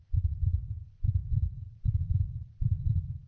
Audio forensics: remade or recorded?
remade